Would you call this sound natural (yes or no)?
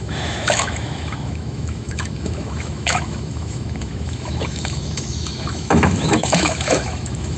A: no